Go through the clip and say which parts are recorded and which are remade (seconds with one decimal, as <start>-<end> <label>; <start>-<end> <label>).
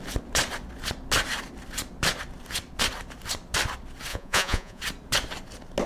0.0-4.1 recorded; 4.1-4.8 remade; 4.8-5.9 recorded